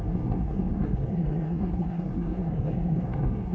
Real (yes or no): no